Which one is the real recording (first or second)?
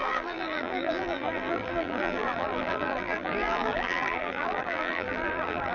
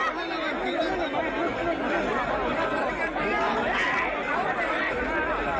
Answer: second